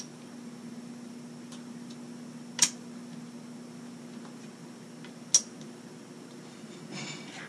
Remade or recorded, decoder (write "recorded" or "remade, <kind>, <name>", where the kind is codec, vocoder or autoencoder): recorded